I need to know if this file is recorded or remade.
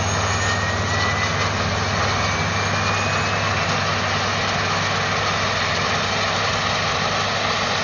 recorded